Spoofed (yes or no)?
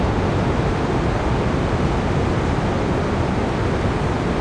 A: no